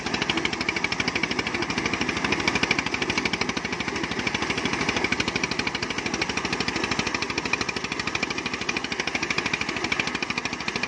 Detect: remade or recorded recorded